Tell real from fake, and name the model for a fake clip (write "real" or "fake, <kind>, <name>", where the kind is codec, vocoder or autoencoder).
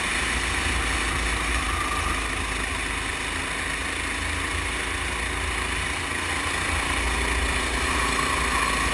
real